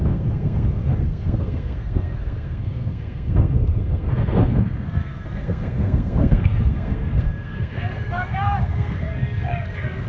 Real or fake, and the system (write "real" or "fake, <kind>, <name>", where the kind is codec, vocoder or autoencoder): fake, codec, SNAC